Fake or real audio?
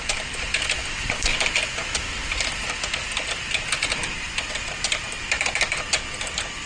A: real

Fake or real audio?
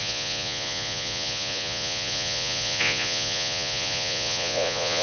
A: fake